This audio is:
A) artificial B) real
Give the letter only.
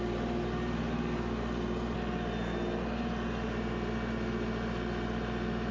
B